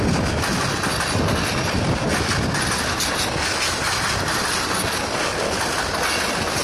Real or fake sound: real